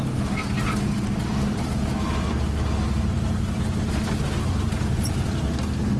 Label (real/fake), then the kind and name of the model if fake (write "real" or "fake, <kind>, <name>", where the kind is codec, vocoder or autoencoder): real